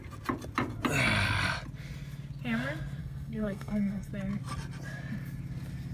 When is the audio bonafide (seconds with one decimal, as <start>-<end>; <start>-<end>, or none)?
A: 0.0-3.0; 4.1-5.9